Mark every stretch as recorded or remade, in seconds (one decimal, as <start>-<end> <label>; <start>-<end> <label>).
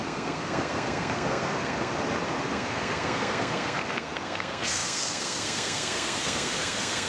0.0-1.9 remade; 1.9-2.4 recorded; 2.4-7.1 remade